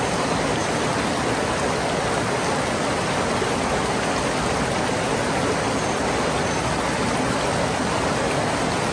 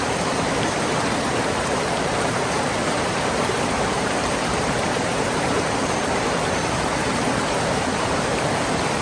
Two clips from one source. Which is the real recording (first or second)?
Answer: first